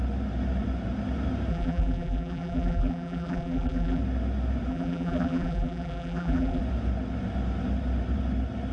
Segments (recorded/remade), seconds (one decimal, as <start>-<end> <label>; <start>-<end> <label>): 0.0-1.5 recorded; 1.5-4.0 remade; 4.0-4.7 recorded; 4.7-6.6 remade; 6.6-8.7 recorded